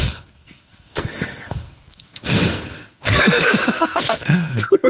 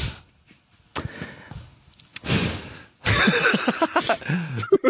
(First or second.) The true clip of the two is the second